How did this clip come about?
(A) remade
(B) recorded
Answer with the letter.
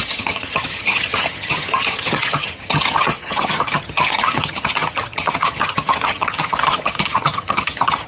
A